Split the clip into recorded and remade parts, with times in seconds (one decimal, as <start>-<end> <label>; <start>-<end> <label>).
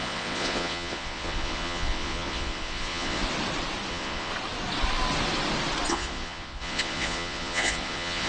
0.0-3.2 remade; 3.2-3.9 recorded; 3.9-4.3 remade; 4.3-5.9 recorded; 5.9-8.3 remade